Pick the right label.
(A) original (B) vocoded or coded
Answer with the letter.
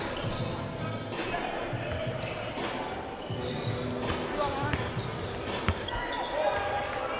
A